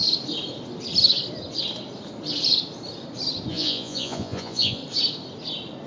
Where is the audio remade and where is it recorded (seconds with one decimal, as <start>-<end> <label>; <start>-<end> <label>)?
0.0-3.5 recorded; 3.5-4.8 remade; 4.8-5.9 recorded